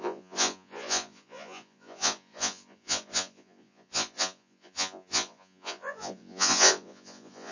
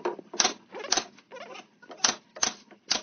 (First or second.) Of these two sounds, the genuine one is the second